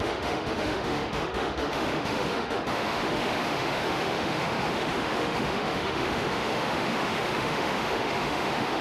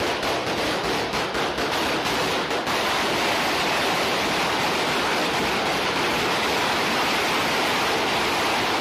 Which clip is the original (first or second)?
second